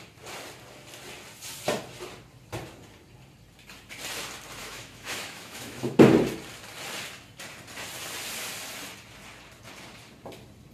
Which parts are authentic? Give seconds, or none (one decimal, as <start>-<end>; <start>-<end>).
0.0-4.6; 6.0-10.7